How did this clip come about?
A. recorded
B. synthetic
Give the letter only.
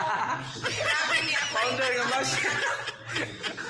A